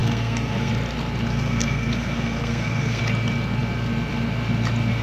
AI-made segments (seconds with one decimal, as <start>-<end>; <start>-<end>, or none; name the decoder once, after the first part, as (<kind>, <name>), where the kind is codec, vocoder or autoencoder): 0.0-0.7 (codec, SNAC); 1.3-3.0